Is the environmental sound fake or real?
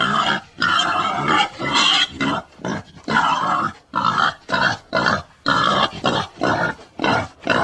fake